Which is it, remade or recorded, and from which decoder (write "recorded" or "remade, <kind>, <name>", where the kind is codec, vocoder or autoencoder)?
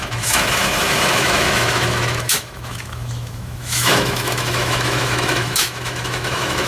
remade, autoencoder, DAC-VAE